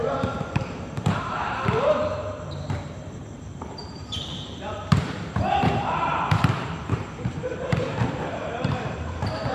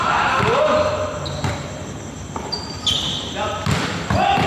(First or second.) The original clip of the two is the second